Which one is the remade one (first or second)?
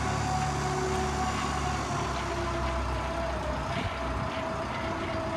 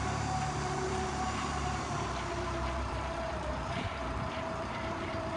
second